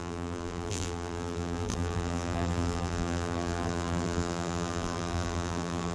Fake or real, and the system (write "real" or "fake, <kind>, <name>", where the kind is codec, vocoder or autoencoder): fake, vocoder, BigVGAN v2